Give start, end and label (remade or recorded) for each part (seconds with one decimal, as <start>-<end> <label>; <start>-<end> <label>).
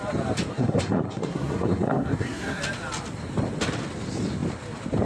0.0-0.5 recorded; 0.5-2.6 remade; 2.6-5.0 recorded